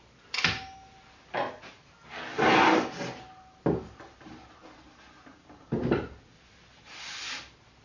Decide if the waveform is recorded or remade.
recorded